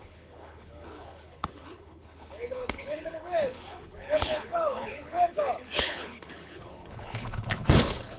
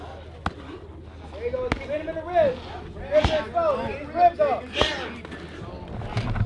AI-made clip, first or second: first